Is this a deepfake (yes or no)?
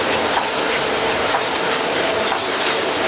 yes